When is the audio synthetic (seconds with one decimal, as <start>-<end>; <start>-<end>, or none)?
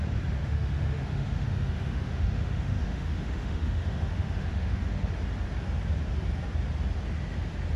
0.4-5.1